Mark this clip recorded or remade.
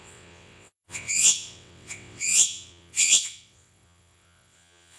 remade